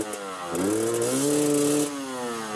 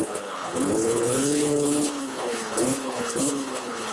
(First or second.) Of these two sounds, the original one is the first